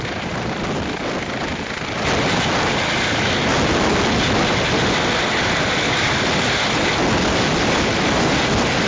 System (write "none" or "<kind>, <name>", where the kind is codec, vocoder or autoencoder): none